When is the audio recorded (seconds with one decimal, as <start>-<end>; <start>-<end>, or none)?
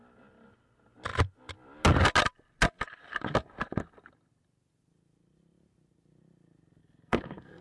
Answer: 0.0-6.8